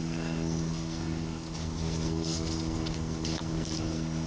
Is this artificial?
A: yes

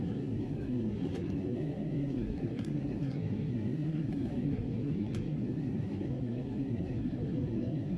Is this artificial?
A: yes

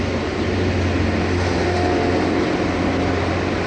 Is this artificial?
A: no